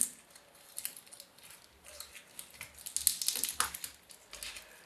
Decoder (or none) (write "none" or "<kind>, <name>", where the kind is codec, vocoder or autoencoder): none